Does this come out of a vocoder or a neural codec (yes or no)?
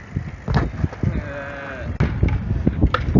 no